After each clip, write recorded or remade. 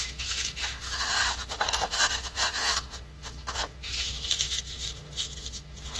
remade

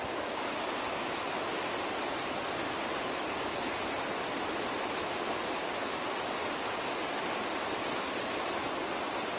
recorded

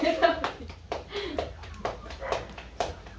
remade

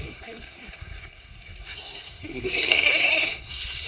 remade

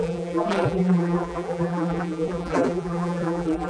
remade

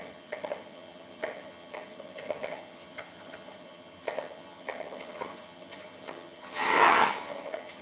remade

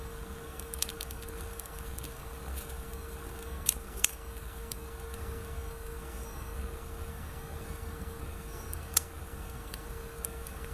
remade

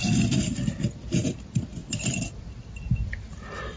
recorded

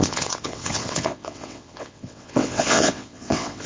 remade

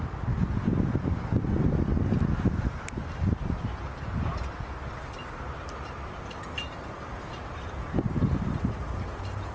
recorded